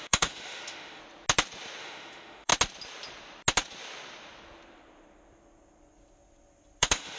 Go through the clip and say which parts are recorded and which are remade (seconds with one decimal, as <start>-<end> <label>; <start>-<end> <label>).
0.0-1.0 remade; 1.0-1.8 recorded; 1.8-2.5 remade; 2.5-6.8 recorded; 6.8-7.2 remade